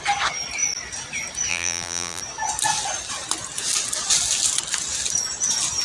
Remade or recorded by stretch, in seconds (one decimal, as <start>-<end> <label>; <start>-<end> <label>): 0.0-1.5 recorded; 1.5-2.2 remade; 2.2-5.8 recorded